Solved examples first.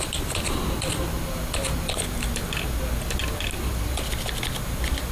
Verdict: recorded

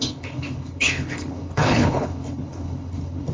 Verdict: remade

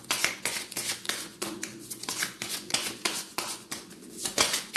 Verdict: remade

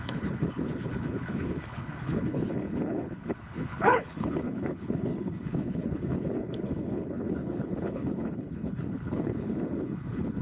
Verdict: remade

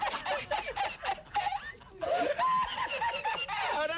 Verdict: recorded